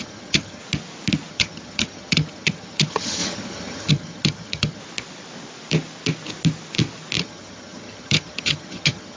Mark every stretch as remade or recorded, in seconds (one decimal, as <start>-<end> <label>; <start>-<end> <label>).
0.0-0.6 remade; 0.6-1.3 recorded; 1.3-4.8 remade; 4.8-7.2 recorded; 7.2-9.2 remade